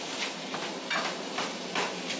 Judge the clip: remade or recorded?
recorded